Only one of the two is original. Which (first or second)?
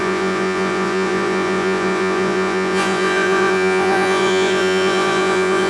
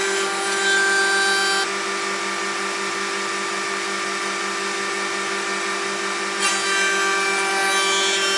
second